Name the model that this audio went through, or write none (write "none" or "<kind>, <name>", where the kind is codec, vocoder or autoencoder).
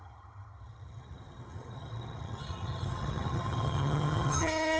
vocoder, HiFi-GAN